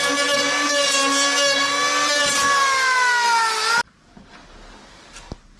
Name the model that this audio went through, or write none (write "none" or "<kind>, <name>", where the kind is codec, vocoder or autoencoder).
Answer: none